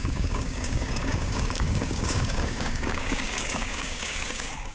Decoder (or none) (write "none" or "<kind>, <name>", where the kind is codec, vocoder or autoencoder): codec, DAC